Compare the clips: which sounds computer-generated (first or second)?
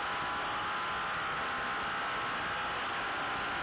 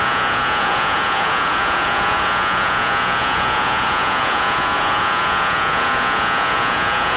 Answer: second